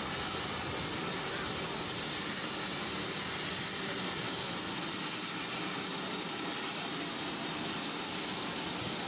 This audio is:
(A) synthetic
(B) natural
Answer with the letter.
B